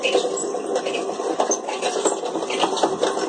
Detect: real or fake real